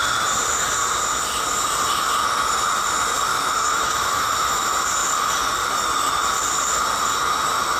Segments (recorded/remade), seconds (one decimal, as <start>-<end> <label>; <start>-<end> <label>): 0.0-3.3 recorded; 3.3-4.6 remade; 4.6-7.8 recorded

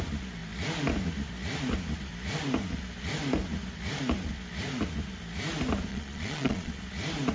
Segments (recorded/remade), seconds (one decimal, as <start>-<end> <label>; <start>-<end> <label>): 0.0-5.9 recorded; 5.9-6.7 remade; 6.7-7.3 recorded

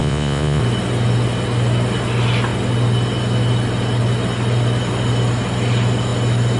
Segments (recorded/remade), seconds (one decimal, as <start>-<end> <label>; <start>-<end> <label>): 0.0-0.6 remade; 0.6-6.6 recorded

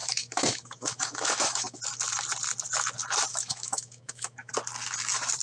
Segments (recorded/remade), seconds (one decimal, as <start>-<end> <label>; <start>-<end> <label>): 0.0-1.8 remade; 1.8-3.3 recorded; 3.3-4.5 remade; 4.5-5.4 recorded

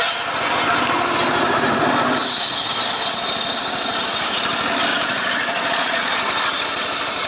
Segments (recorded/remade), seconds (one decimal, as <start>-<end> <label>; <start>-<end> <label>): 0.0-4.9 recorded; 4.9-6.2 remade; 6.2-7.3 recorded

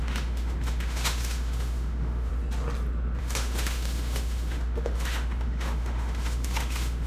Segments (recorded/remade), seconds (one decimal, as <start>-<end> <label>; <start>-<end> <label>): 0.0-2.3 remade; 2.3-3.2 recorded; 3.2-7.1 remade

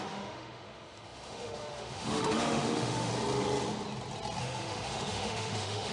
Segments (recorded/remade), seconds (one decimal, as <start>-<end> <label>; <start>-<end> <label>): 0.0-3.1 remade; 3.1-4.4 recorded; 4.4-5.9 remade